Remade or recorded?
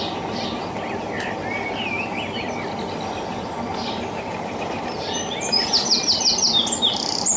recorded